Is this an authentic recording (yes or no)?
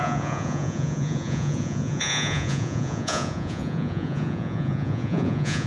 no